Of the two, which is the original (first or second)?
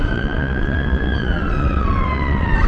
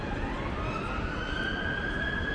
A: second